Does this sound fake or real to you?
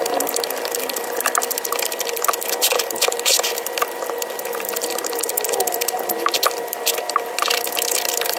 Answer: fake